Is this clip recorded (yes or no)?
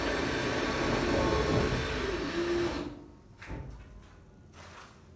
yes